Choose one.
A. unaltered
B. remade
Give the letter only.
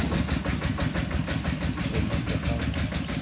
A